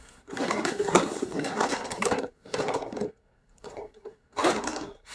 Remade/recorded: remade